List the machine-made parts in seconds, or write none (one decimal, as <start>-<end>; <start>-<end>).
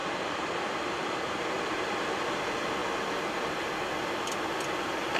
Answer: 0.0-1.4